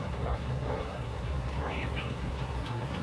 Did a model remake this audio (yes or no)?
yes